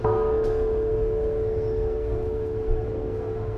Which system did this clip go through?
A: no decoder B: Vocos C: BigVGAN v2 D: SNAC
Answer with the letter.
D